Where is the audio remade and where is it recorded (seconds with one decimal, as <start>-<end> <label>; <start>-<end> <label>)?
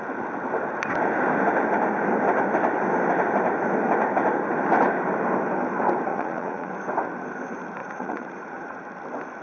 0.0-6.1 recorded; 6.1-6.7 remade; 6.7-7.8 recorded; 7.8-8.8 remade; 8.8-9.4 recorded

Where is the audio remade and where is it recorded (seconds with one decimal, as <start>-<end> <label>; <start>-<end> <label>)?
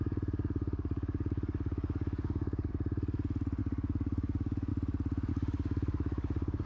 0.0-2.7 remade; 2.7-3.6 recorded; 3.6-4.7 remade; 4.7-5.3 recorded; 5.3-6.7 remade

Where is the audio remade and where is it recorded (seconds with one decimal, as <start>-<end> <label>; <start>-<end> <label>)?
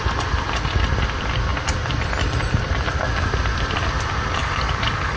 0.0-4.4 recorded; 4.4-5.2 remade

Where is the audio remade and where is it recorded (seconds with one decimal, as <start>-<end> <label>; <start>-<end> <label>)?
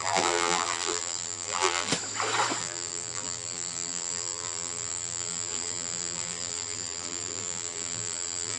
0.0-1.9 remade; 1.9-2.6 recorded; 2.6-8.6 remade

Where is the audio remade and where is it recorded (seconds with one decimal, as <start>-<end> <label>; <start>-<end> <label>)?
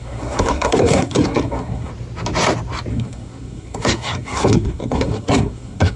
0.0-1.9 remade; 1.9-2.9 recorded; 2.9-6.0 remade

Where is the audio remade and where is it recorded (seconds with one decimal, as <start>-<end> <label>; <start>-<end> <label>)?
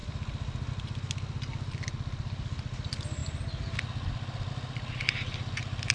0.0-5.9 recorded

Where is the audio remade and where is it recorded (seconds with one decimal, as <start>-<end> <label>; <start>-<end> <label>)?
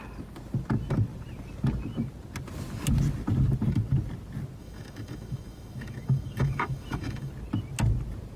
0.0-4.6 recorded; 4.6-7.3 remade; 7.3-8.4 recorded